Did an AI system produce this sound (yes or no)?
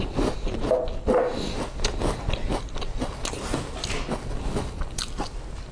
no